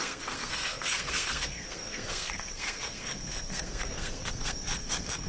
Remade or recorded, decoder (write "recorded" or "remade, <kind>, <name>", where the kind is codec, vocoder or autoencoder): remade, codec, SNAC